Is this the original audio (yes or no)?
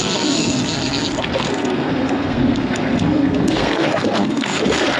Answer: no